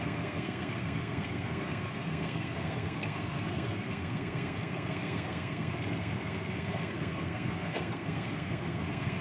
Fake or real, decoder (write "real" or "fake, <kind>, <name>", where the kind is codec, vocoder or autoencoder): fake, codec, SNAC